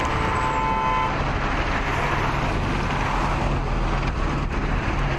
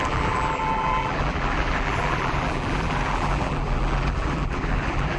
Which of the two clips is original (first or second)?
first